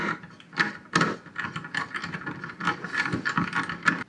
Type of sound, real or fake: real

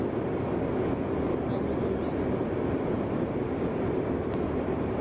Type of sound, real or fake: real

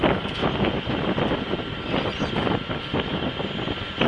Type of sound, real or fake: real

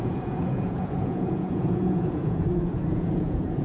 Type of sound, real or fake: fake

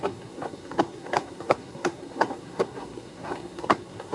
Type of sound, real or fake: fake